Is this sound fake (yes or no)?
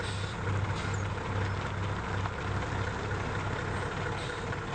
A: no